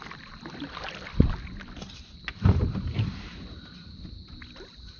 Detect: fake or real real